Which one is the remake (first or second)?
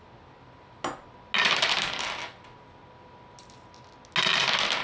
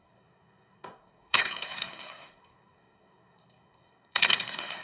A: second